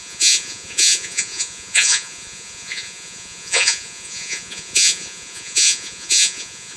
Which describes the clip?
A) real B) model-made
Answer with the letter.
B